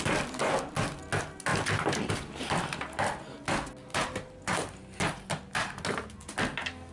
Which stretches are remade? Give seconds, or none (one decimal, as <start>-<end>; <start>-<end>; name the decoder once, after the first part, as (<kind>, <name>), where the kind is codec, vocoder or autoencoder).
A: none